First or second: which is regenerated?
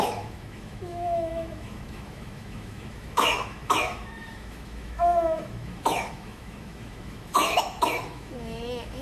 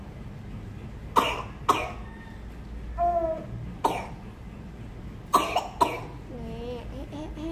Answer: first